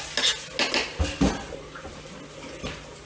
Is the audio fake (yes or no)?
no